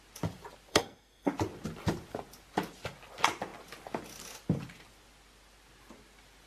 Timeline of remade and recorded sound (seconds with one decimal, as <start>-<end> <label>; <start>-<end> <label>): 0.0-0.7 recorded; 0.7-1.3 remade; 1.3-6.5 recorded